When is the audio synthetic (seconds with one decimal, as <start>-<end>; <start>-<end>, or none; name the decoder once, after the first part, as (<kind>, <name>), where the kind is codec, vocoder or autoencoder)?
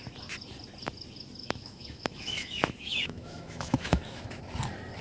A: 1.4-4.4 (autoencoder, DAC-VAE)